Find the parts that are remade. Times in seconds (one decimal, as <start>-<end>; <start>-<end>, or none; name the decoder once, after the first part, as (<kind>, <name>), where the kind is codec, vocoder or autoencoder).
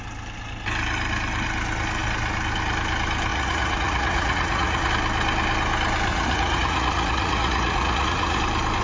3.3-4.9 (vocoder, Vocos); 6.1-8.4